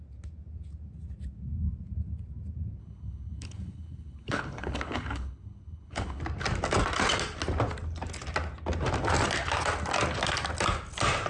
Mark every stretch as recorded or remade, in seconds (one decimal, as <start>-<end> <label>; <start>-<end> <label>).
0.0-2.8 recorded; 2.8-6.2 remade; 6.2-11.3 recorded